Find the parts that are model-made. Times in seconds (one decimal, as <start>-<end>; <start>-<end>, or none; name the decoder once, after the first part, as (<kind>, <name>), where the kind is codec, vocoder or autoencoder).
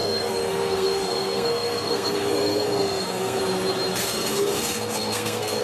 0.0-3.4 (codec, SNAC); 3.9-5.6